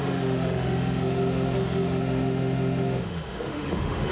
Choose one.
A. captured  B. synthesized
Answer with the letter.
B